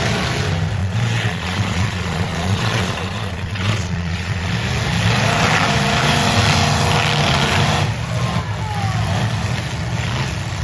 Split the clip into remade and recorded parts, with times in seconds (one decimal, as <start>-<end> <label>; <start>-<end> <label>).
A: 0.0-0.8 recorded; 0.8-4.5 remade; 4.5-10.6 recorded